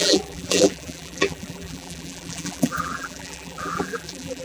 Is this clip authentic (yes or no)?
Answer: no